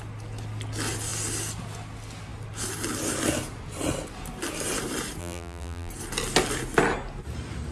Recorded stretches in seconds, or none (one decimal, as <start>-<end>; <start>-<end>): 0.0-5.2; 5.9-7.7